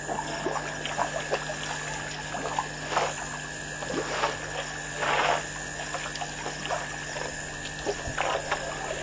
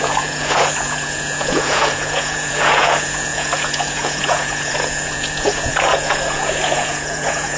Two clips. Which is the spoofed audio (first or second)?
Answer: second